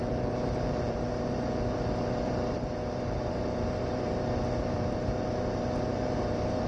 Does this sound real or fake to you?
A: fake